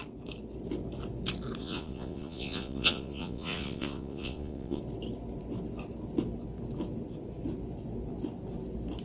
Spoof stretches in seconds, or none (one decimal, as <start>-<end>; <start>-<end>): 1.6-4.8